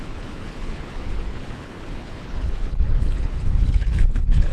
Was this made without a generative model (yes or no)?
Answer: no